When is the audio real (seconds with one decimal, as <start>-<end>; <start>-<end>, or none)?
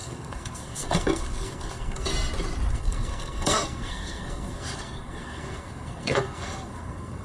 2.1-2.7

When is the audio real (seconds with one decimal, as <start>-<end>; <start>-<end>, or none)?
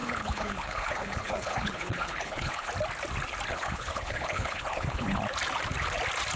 2.7-3.5; 5.2-6.4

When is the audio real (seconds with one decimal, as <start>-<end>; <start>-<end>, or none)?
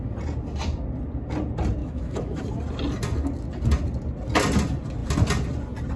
0.0-1.8; 2.4-6.0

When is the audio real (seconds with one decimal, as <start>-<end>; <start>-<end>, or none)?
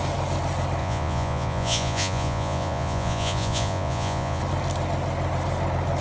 0.0-0.8; 4.4-6.0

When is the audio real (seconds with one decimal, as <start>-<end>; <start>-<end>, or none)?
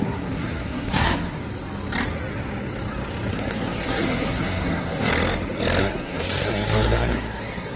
1.4-3.3; 5.1-5.8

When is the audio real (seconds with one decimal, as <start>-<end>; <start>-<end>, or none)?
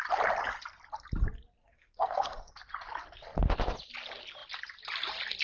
0.0-1.6; 2.5-5.4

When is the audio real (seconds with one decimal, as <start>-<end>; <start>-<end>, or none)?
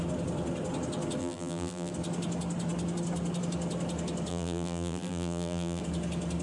0.0-1.2; 1.9-4.3; 5.8-6.4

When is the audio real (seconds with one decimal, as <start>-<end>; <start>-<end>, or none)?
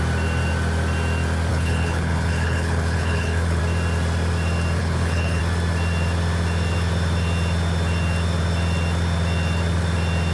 0.0-1.5; 3.6-4.8; 5.4-10.3